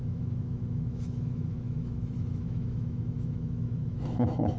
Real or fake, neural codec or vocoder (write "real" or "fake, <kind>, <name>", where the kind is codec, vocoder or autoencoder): fake, autoencoder, DAC-VAE